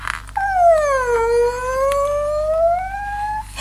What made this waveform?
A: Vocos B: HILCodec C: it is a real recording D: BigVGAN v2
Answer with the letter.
C